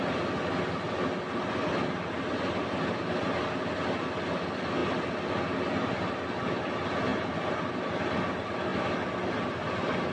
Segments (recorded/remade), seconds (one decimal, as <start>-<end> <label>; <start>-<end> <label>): 0.0-10.1 recorded